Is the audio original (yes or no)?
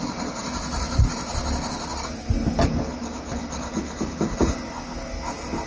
yes